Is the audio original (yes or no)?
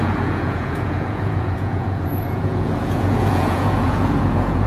no